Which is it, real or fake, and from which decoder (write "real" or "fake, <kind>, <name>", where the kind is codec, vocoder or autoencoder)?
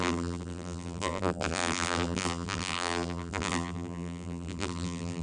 fake, vocoder, BigVGAN v2